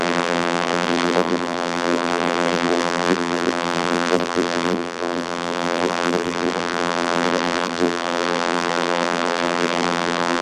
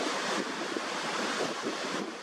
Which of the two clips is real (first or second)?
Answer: second